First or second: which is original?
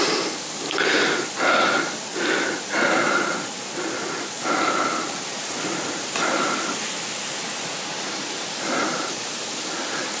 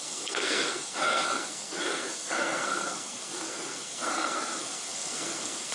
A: first